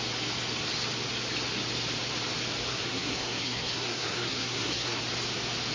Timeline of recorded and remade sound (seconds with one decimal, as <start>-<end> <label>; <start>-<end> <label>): 0.0-2.7 recorded; 2.7-5.0 remade; 5.0-5.7 recorded